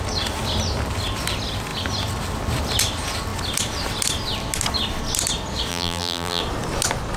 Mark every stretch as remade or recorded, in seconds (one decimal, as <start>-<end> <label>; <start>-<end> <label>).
0.0-5.7 recorded; 5.7-6.4 remade; 6.4-7.2 recorded